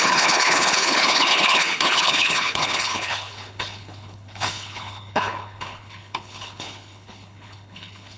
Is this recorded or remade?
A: remade